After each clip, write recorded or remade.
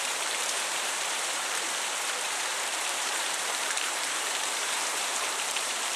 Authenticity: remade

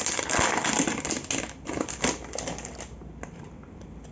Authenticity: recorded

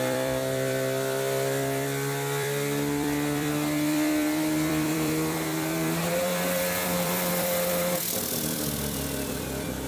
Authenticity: remade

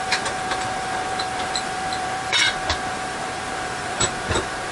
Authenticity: remade